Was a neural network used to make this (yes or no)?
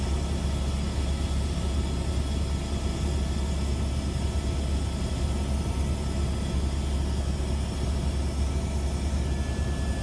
no